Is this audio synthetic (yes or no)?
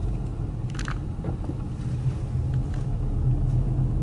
no